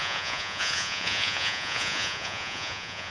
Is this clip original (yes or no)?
no